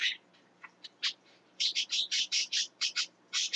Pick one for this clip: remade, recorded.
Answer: remade